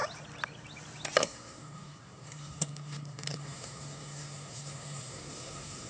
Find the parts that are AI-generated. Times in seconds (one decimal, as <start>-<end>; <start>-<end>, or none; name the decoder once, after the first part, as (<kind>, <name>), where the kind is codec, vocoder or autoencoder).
1.2-5.9 (codec, SNAC)